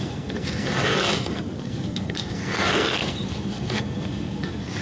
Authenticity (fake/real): fake